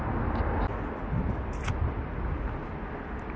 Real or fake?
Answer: real